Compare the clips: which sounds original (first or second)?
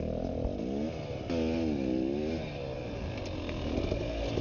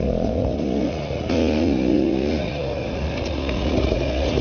first